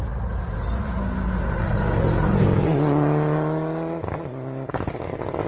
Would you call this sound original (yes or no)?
yes